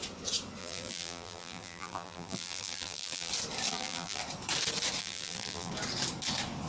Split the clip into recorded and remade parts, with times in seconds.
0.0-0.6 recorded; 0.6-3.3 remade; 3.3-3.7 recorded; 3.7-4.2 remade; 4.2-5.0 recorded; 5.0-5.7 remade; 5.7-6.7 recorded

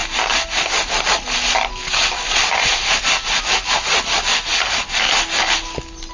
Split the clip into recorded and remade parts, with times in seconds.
0.0-6.1 recorded